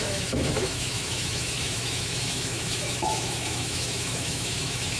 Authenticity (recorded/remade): remade